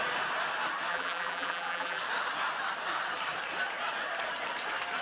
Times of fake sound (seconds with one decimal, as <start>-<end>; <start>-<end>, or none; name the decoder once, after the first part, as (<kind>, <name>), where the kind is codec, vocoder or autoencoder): 0.9-2.0 (vocoder, BigVGAN v2)